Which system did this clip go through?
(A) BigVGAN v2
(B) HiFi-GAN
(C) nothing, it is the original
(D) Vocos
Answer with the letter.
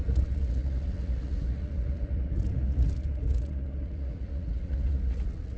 D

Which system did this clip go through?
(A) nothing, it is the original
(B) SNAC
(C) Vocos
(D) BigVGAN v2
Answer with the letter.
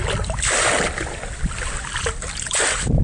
A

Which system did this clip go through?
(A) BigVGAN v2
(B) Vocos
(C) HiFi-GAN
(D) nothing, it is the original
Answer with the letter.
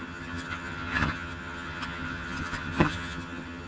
C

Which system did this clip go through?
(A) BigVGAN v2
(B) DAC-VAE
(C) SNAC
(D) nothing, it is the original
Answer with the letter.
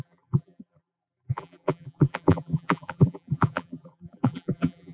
A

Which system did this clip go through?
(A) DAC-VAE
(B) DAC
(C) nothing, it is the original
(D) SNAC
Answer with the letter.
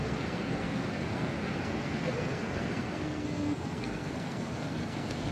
D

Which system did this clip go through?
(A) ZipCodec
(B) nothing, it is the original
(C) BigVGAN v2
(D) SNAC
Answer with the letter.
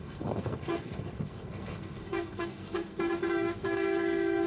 D